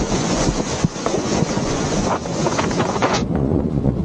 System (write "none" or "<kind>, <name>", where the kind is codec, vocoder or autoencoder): vocoder, Vocos